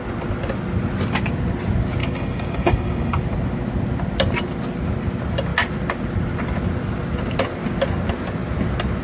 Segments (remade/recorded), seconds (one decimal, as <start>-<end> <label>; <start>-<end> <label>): 0.0-2.0 recorded; 2.0-3.2 remade; 3.2-9.0 recorded